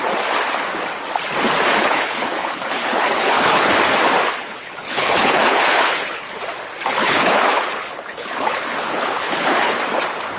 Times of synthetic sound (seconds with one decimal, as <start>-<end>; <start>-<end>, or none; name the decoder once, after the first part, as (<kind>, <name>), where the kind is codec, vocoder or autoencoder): 1.8-3.7 (codec, HILCodec); 4.4-6.4; 7.0-9.8

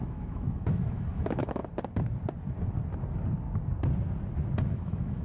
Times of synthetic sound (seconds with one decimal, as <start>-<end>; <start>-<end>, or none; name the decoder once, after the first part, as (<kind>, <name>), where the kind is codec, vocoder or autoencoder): 0.0-1.6 (autoencoder, DAC-VAE); 4.7-5.2

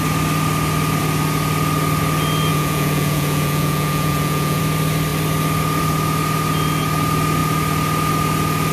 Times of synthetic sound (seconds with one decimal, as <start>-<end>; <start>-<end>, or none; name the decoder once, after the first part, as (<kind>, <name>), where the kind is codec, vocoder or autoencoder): 2.5-4.6 (vocoder, Vocos)